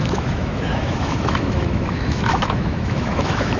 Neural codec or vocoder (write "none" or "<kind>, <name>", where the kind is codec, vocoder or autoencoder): autoencoder, DAC-VAE